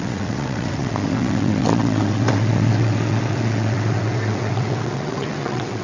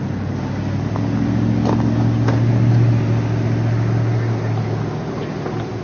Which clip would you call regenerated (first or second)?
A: first